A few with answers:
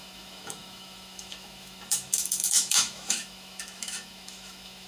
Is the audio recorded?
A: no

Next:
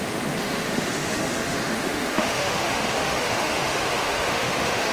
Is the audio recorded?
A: no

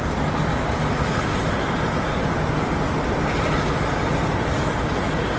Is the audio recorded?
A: yes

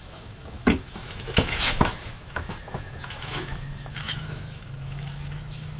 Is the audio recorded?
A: no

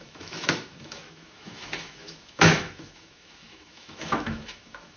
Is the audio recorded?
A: no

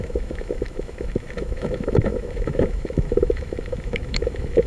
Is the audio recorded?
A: no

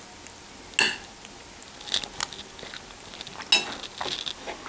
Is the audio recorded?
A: yes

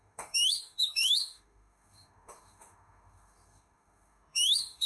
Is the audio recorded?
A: no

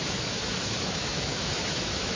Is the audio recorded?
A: no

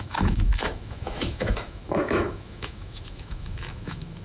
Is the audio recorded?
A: no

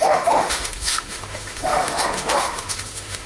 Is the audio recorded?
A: no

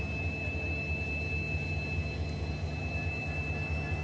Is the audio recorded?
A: yes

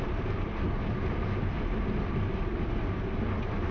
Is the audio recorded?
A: yes